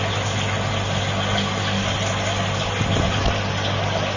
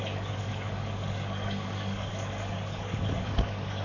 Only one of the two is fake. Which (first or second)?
second